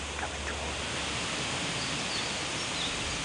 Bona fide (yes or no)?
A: yes